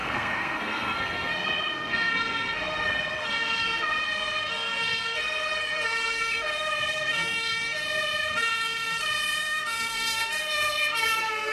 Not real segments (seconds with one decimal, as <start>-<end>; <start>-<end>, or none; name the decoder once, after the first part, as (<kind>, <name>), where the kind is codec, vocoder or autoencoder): 0.0-11.5 (codec, SNAC)